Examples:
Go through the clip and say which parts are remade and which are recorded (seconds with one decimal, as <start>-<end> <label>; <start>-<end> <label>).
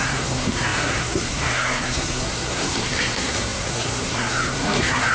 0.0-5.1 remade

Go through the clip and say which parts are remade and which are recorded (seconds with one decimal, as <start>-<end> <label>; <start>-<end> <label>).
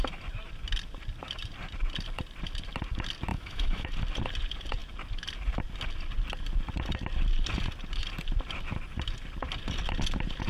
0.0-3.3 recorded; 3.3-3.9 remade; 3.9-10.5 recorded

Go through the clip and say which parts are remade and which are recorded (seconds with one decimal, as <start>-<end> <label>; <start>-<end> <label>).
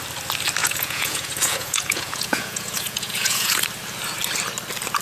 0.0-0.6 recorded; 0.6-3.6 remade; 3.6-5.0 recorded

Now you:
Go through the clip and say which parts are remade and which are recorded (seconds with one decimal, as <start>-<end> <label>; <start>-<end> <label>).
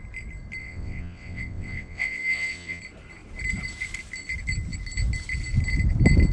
0.0-0.6 recorded; 0.6-2.8 remade; 2.8-6.3 recorded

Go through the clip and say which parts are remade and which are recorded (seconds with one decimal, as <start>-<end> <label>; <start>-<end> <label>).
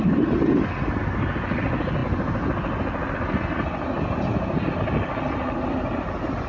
0.0-6.5 recorded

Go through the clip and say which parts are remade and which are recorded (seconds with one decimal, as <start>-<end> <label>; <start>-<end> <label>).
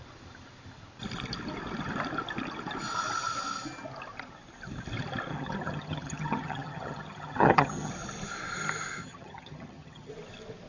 0.0-5.3 recorded; 5.3-7.9 remade; 7.9-9.0 recorded; 9.0-10.1 remade; 10.1-10.7 recorded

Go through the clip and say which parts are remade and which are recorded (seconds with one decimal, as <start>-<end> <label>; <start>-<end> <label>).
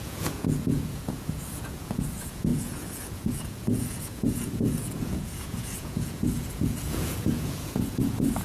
0.0-8.4 remade